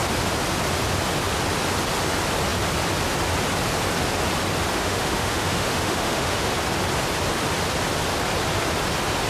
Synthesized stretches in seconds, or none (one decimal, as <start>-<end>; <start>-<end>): 4.8-6.5

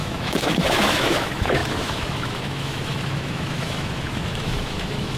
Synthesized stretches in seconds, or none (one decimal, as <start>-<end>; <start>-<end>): 0.0-5.2

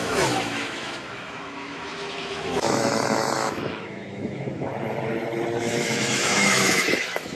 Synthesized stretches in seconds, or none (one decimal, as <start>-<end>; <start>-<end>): 0.0-4.7; 5.6-7.4

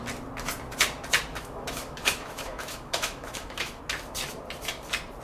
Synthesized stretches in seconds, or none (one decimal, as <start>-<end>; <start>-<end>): 1.3-3.8

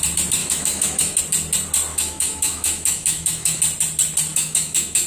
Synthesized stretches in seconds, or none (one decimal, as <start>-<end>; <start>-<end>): 0.4-1.2; 1.9-3.6; 4.3-5.1

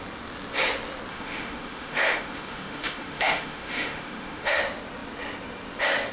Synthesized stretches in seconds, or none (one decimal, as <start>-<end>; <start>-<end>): 1.1-4.6